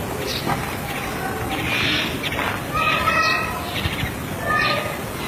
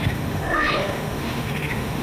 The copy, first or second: second